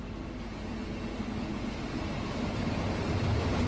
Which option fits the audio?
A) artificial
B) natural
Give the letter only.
B